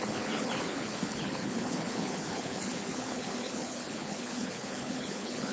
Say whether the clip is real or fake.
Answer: fake